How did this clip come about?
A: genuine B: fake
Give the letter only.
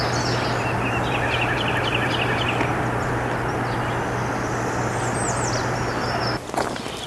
A